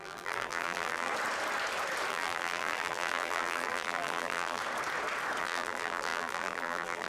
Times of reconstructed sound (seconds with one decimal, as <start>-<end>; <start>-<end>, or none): 0.0-1.1; 2.1-4.6; 5.4-7.1